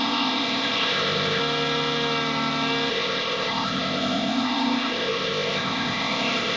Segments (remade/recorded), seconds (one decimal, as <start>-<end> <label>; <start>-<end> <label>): 0.0-1.4 remade; 1.4-2.9 recorded; 2.9-6.6 remade